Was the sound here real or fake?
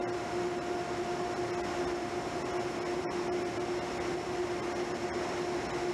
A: real